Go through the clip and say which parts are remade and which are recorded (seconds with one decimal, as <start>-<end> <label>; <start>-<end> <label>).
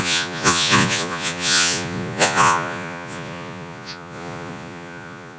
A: 0.0-5.4 remade